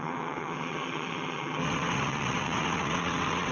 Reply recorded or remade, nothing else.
remade